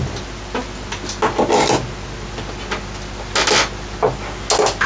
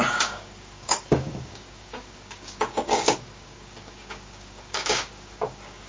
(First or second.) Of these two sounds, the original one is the first